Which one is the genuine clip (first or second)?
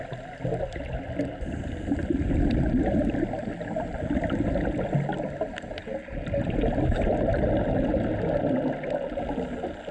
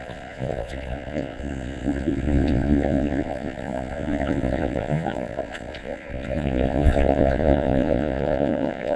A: first